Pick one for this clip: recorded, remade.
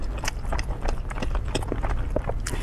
recorded